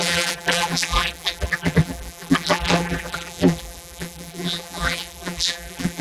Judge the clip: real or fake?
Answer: fake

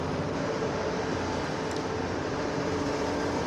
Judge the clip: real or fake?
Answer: real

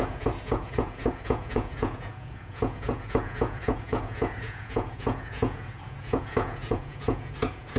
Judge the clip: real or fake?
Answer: fake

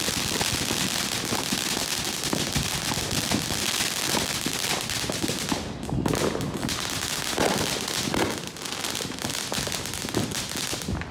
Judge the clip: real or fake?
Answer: real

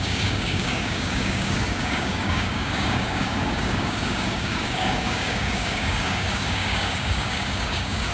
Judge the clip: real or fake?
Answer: fake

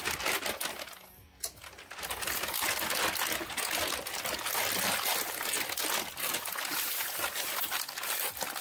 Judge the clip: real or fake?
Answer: real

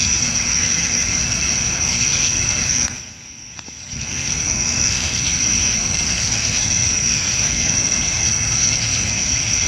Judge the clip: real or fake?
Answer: fake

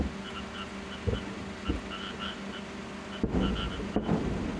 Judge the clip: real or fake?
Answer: real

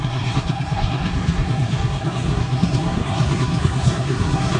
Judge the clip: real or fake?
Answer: fake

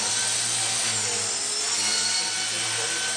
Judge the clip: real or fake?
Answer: real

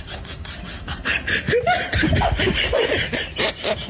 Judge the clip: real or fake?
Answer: fake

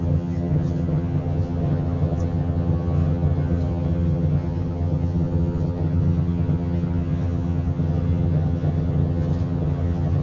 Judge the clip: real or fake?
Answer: fake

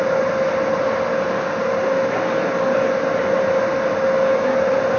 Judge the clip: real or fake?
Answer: real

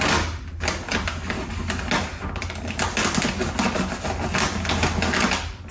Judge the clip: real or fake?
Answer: real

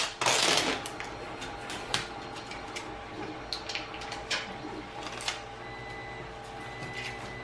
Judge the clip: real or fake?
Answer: real